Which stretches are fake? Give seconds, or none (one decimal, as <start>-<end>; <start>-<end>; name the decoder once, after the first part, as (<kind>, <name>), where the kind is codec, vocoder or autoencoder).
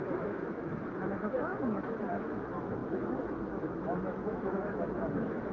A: 0.0-5.5 (autoencoder, DAC-VAE)